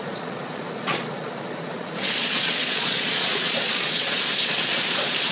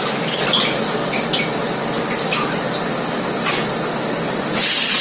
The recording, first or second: second